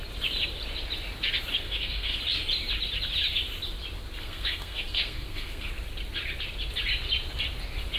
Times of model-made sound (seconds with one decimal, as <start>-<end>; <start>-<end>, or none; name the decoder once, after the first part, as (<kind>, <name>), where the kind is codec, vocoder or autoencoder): 1.5-2.2 (codec, SNAC); 4.2-5.7